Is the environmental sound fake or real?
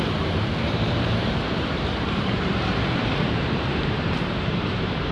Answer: fake